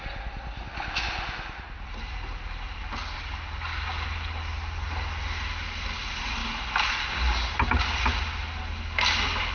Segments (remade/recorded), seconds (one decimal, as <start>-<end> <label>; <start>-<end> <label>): 0.0-9.5 recorded